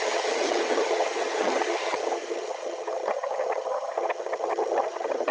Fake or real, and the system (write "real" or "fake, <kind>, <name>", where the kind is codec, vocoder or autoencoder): fake, vocoder, HiFi-GAN